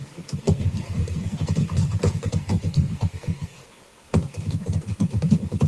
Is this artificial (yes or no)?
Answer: yes